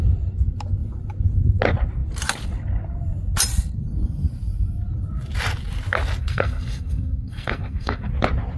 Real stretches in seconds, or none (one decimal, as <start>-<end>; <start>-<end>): 0.0-6.2; 8.1-8.6